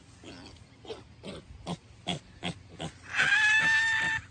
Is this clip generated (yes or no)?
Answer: no